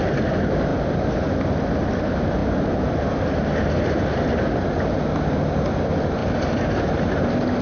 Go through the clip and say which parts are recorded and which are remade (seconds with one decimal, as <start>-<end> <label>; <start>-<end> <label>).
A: 0.0-7.6 recorded